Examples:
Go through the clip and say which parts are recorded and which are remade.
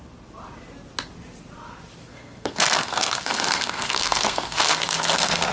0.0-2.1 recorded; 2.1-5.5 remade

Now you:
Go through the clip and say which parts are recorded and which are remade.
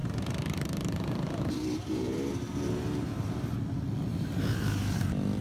0.0-3.2 remade; 3.2-4.1 recorded; 4.1-5.0 remade; 5.0-5.4 recorded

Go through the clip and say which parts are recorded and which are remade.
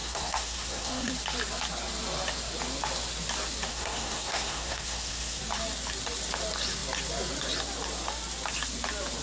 0.0-1.1 remade; 1.1-3.7 recorded; 3.7-5.4 remade; 5.4-9.2 recorded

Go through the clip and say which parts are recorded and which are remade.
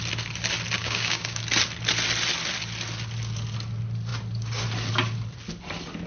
0.0-0.8 recorded; 0.8-1.4 remade; 1.4-6.1 recorded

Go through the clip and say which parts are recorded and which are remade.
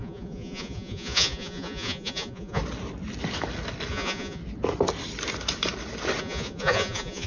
0.0-2.6 remade; 2.6-3.9 recorded; 3.9-4.4 remade; 4.4-6.2 recorded; 6.2-7.3 remade